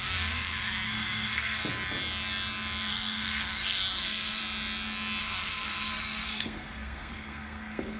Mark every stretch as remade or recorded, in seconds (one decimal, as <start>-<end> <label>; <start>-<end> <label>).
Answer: 0.0-1.6 remade; 1.6-2.9 recorded; 2.9-4.4 remade; 4.4-5.2 recorded; 5.2-8.0 remade